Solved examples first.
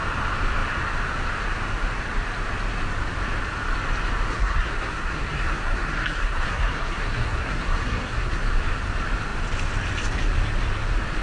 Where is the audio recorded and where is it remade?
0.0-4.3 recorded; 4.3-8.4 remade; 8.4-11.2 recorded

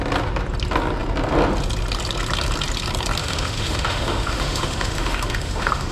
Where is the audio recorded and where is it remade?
0.0-3.2 recorded; 3.2-5.9 remade